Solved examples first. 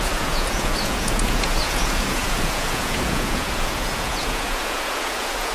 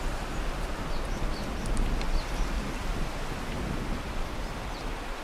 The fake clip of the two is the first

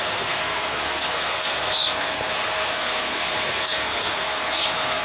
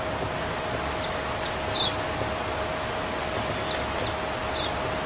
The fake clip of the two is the first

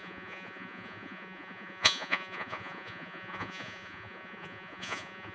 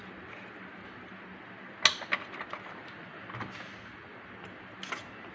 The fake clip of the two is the first